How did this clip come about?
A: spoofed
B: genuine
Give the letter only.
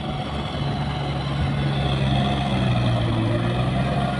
B